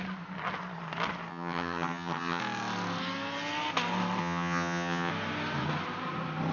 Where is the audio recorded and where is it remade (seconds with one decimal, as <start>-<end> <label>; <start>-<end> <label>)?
0.0-1.3 recorded; 1.3-2.4 remade; 2.4-4.2 recorded; 4.2-5.1 remade; 5.1-6.5 recorded